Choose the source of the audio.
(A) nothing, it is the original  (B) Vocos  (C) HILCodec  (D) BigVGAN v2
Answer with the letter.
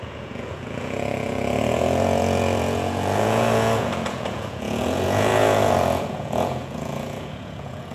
B